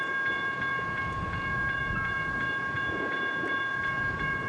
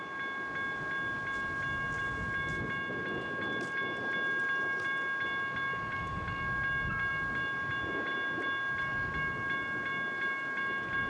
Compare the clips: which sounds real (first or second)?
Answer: second